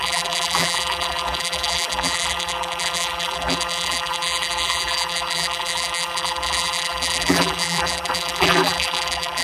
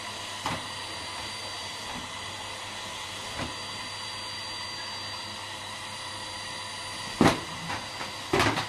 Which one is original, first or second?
second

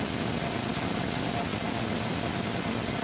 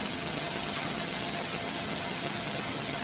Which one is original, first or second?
first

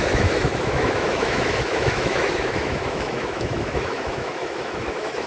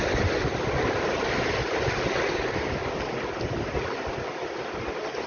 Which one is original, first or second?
second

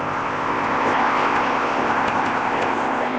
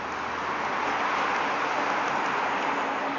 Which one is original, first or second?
second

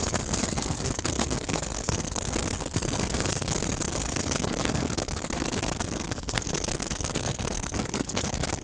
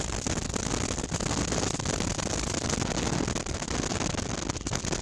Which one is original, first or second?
second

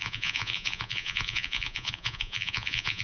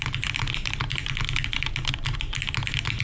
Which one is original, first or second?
second